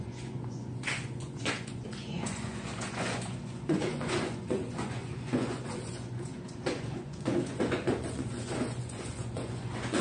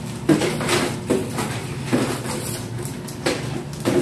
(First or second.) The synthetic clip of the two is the first